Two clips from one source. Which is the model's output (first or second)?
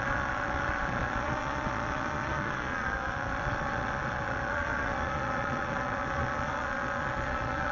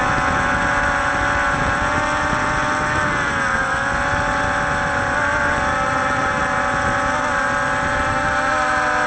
first